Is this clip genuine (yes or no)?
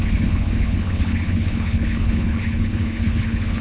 no